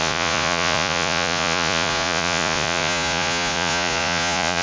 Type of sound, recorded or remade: remade